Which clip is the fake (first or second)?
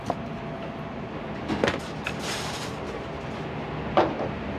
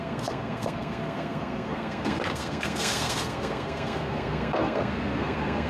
second